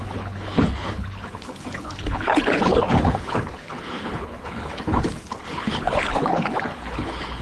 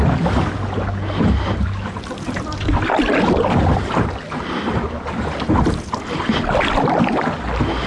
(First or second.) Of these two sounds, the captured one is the second